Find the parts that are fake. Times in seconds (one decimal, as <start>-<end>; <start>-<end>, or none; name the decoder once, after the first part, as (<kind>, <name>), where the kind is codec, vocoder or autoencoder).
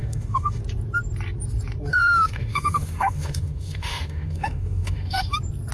0.0-0.6 (autoencoder, DAC-VAE); 1.9-5.3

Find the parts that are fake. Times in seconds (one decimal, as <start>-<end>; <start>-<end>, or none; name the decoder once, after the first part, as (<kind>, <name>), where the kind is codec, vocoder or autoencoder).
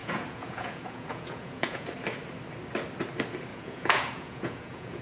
0.0-1.9 (vocoder, Vocos); 3.5-5.0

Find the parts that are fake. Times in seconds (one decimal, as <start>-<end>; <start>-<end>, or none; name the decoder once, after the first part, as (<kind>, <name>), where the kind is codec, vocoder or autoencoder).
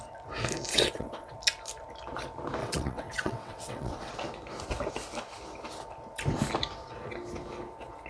0.7-1.3 (vocoder, WaveNeXt); 2.6-4.1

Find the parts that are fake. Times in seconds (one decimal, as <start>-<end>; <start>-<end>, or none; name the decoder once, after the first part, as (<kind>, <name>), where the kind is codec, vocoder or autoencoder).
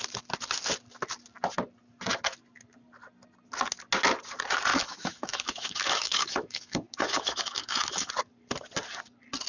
4.7-8.1 (autoencoder, DAC-VAE)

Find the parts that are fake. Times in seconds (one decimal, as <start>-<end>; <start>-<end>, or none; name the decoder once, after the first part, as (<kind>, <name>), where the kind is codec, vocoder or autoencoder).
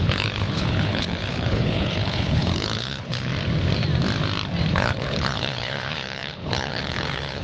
0.0-3.3 (codec, HILCodec); 4.7-7.4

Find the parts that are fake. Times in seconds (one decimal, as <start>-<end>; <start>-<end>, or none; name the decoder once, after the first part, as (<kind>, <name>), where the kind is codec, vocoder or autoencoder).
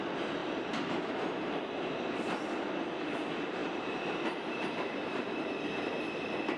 0.4-1.1 (vocoder, BigVGAN v2); 3.6-5.5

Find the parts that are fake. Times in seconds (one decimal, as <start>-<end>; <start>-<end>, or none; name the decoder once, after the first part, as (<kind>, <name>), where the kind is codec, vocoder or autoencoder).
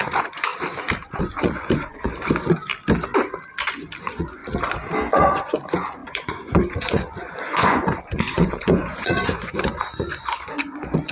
0.0-0.5 (vocoder, Vocos); 1.2-2.7; 4.0-4.4; 5.1-11.1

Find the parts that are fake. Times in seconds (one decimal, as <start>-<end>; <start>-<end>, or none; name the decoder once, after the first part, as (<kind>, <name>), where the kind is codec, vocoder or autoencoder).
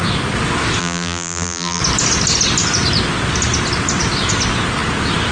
0.8-1.8 (vocoder, BigVGAN v2)